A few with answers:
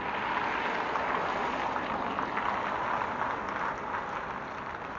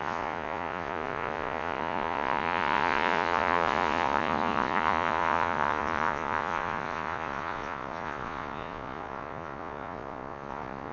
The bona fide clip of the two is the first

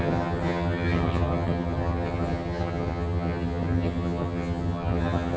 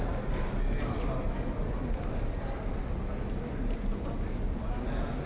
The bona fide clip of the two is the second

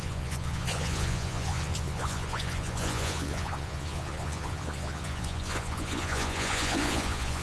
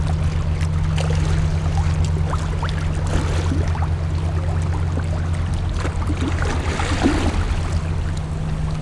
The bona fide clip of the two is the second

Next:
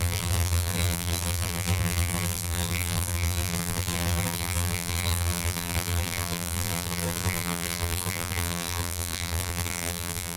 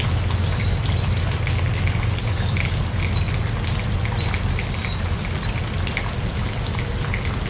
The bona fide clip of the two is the second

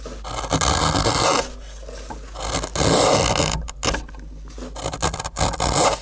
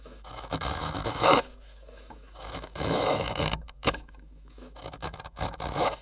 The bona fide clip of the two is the first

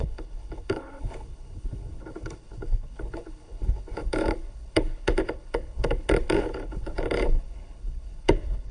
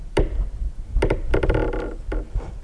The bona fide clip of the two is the second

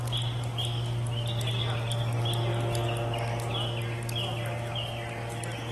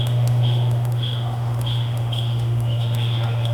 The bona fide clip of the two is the first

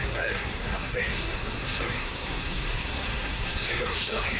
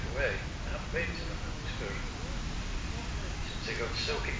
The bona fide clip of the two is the second